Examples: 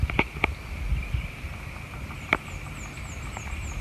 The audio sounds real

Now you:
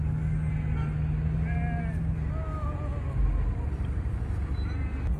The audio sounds real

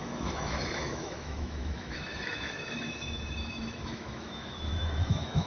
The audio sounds fake